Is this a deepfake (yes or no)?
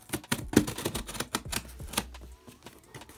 no